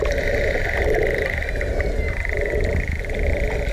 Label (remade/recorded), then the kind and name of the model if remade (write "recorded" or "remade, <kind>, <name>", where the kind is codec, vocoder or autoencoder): recorded